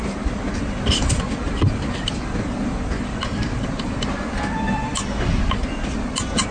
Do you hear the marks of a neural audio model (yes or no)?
yes